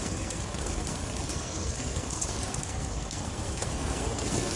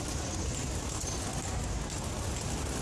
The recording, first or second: second